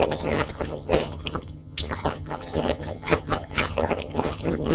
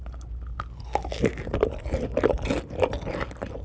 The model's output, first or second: first